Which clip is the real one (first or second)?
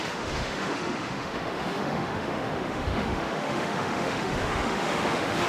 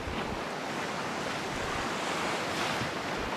second